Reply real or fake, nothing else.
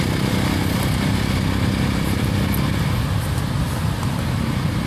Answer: real